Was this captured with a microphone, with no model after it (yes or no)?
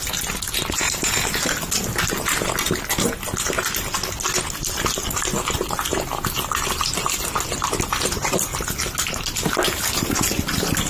yes